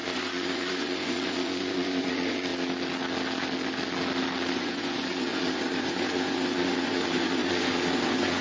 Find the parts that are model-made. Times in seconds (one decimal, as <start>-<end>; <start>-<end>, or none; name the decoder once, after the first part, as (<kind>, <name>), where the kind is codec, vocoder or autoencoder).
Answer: 0.0-2.5 (vocoder, Vocos); 4.5-8.4